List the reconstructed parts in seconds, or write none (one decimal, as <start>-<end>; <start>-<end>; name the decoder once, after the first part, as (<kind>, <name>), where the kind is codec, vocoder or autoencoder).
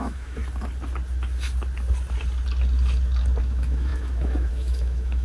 0.0-0.4 (autoencoder, DAC-VAE); 3.4-5.2